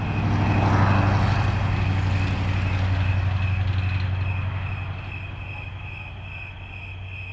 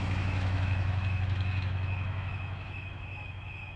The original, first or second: first